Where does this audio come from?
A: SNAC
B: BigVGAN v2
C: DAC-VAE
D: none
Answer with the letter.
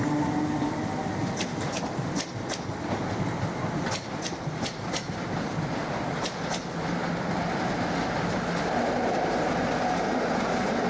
D